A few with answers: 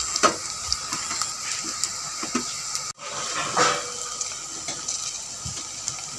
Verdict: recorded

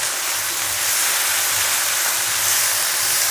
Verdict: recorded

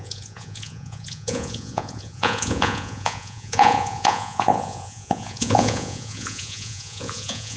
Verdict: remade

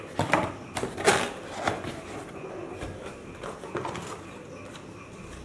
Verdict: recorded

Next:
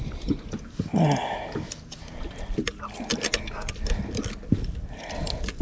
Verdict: recorded